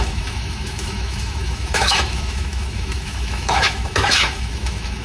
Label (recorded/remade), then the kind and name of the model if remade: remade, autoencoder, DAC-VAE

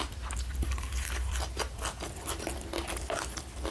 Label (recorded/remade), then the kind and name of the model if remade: recorded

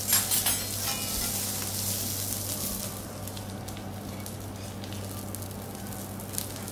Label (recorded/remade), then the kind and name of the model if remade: recorded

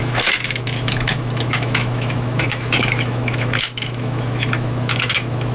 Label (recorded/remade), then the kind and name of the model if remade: remade, autoencoder, DAC-VAE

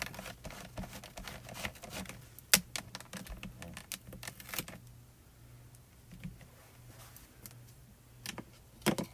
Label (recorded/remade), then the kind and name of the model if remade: recorded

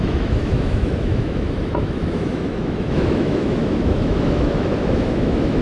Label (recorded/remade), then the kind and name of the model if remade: remade, autoencoder, DAC-VAE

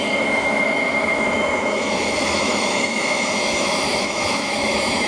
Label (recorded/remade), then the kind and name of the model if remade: remade, autoencoder, DAC-VAE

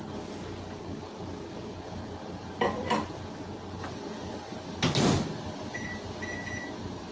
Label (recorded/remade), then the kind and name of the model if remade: recorded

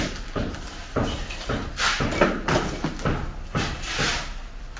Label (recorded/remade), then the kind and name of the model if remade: recorded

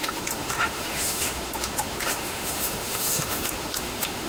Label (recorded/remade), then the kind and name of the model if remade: remade, autoencoder, DAC-VAE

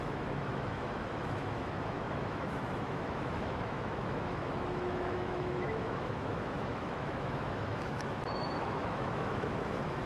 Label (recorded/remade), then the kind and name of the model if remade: remade, autoencoder, DAC-VAE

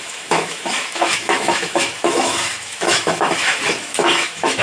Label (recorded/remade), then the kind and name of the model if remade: remade, autoencoder, DAC-VAE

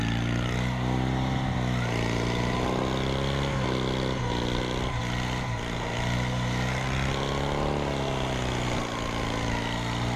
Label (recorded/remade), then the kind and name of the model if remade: recorded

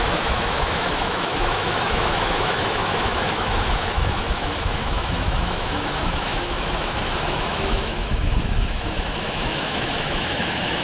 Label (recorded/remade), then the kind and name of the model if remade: remade, autoencoder, DAC-VAE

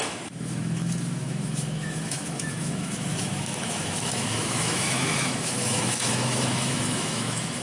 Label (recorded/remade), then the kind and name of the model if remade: remade, autoencoder, DAC-VAE